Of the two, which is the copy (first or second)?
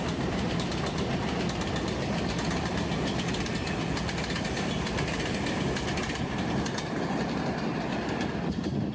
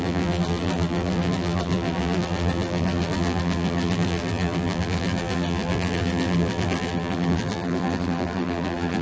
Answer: second